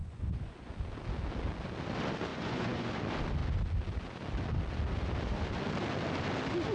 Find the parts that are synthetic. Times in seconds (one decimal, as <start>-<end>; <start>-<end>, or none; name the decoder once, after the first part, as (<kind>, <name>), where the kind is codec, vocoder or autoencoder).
0.0-0.7 (vocoder, Vocos); 2.3-2.9